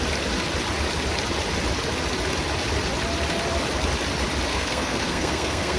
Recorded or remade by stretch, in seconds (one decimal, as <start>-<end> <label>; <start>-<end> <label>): 0.0-4.5 recorded; 4.5-5.8 remade

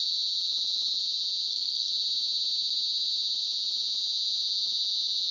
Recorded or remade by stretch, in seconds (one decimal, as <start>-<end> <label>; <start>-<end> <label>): 0.0-1.5 recorded; 1.5-1.9 remade; 1.9-5.3 recorded

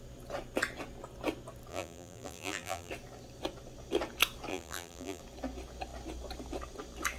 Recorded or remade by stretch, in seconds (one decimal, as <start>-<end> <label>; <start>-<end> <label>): 0.0-1.7 recorded; 1.7-2.9 remade; 2.9-4.5 recorded; 4.5-5.2 remade; 5.2-7.2 recorded

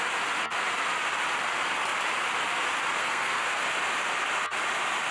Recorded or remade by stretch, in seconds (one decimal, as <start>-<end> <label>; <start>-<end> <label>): 0.0-3.0 recorded; 3.0-3.6 remade; 3.6-5.1 recorded